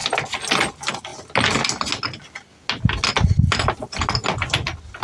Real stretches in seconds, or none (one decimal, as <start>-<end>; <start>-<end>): 0.0-5.0